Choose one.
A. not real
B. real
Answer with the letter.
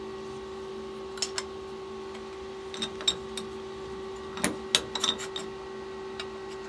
B